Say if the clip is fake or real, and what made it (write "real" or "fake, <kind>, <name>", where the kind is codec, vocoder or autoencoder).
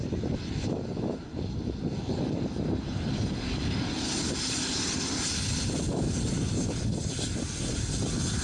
real